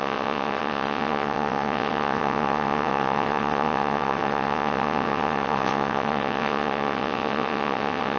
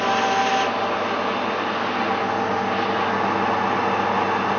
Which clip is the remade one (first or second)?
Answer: first